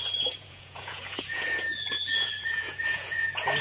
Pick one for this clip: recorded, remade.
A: remade